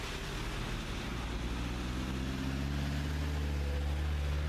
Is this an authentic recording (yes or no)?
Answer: yes